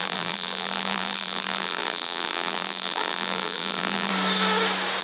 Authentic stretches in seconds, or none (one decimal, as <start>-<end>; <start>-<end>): 4.1-5.0